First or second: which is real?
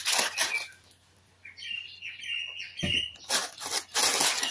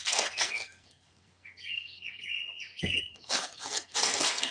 first